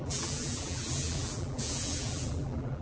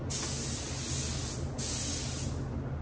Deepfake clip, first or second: first